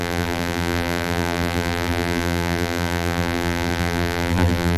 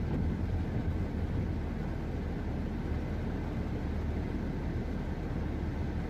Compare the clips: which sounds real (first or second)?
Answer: second